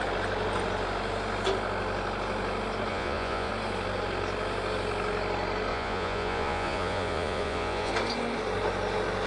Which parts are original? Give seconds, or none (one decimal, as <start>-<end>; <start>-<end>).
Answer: 0.0-2.9; 3.5-5.7; 7.9-9.3